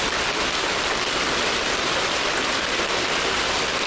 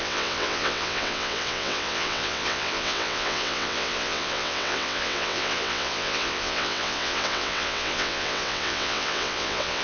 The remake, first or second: second